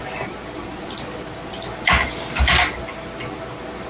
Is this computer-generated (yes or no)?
no